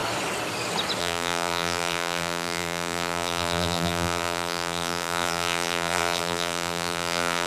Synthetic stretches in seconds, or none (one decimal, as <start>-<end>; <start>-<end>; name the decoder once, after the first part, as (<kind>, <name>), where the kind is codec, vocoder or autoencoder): 1.0-7.5 (vocoder, BigVGAN v2)